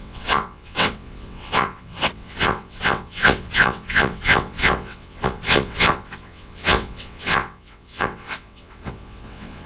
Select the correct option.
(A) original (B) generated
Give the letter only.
B